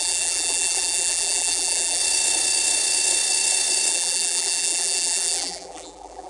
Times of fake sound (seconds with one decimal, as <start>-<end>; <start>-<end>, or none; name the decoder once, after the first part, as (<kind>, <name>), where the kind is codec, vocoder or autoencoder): 0.0-2.0 (vocoder, BigVGAN v2); 3.9-6.3